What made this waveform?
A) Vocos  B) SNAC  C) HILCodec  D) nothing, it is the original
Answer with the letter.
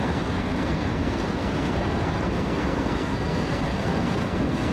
B